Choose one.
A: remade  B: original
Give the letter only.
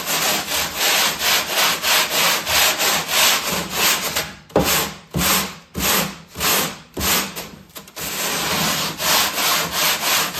B